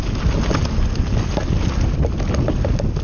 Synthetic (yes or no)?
no